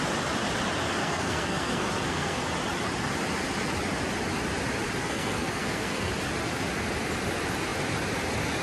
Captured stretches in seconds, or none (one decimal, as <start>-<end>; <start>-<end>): 0.0-1.0; 2.4-5.0; 6.1-8.6